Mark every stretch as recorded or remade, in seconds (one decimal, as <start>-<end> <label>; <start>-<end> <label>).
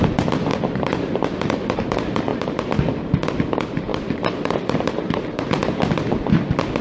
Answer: 0.0-0.5 recorded; 0.5-1.8 remade; 1.8-3.9 recorded; 3.9-5.8 remade; 5.8-6.8 recorded